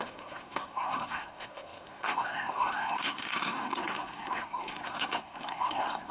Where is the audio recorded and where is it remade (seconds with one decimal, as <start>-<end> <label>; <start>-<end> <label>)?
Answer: 0.0-6.1 remade